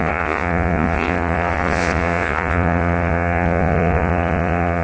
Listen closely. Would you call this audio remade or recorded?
remade